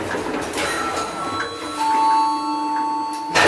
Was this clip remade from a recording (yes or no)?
no